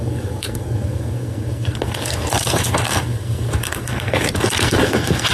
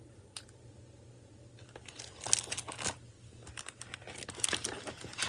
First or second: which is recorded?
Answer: second